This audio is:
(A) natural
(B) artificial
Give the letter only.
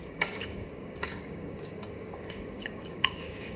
B